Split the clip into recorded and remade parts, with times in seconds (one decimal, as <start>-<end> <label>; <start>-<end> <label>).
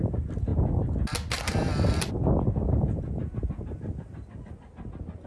0.0-5.3 recorded